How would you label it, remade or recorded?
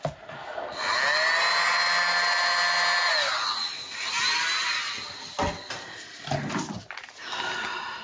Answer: recorded